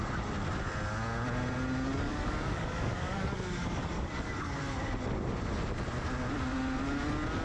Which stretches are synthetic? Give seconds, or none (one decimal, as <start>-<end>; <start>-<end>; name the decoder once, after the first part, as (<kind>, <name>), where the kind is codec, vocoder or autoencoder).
2.1-4.6 (codec, DAC)